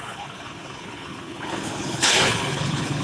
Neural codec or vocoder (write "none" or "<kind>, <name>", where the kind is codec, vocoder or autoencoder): codec, HILCodec